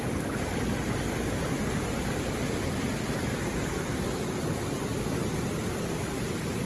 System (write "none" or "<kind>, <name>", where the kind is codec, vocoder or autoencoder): none